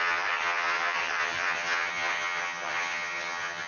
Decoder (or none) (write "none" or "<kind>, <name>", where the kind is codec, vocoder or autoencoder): vocoder, HiFi-GAN